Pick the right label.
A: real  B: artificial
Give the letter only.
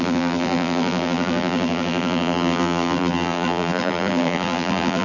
B